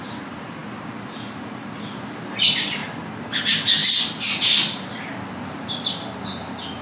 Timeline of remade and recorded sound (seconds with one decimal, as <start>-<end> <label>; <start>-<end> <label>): 0.0-6.8 recorded